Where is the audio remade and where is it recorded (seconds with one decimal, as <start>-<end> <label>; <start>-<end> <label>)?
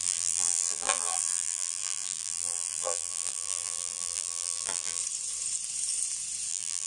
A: 0.0-5.0 remade; 5.0-6.5 recorded; 6.5-6.9 remade